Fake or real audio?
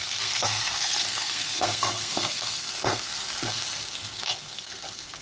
fake